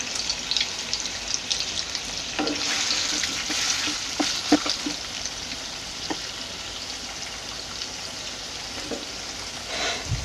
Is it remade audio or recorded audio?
recorded